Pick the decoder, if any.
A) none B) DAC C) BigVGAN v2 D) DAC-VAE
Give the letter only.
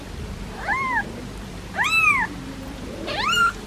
A